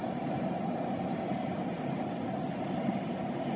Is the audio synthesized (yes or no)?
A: no